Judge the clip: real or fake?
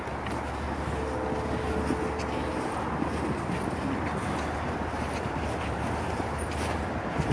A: real